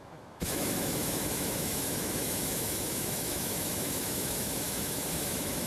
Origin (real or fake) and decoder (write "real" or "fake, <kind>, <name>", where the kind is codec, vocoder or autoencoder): fake, autoencoder, DAC-VAE